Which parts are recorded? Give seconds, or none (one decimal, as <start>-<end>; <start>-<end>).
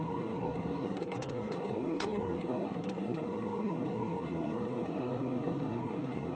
none